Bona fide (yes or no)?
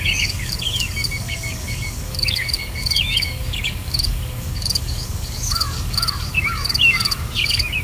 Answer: no